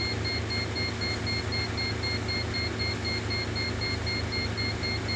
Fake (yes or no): no